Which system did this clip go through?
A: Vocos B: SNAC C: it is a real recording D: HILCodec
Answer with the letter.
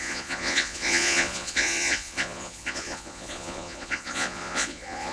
A